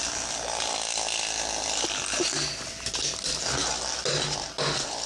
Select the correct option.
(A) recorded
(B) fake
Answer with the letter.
A